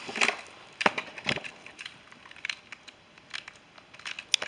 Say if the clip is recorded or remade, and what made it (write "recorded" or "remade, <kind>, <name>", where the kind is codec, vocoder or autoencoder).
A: recorded